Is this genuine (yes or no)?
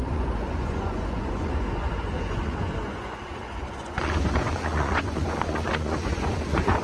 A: no